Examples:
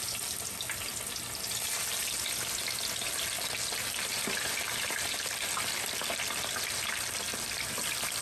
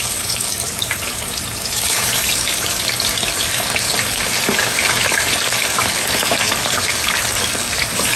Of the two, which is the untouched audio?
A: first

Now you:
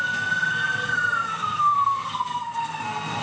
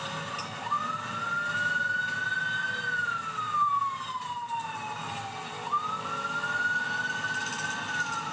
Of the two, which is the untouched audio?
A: second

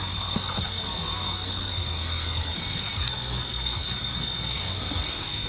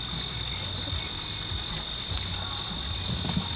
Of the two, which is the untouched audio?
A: second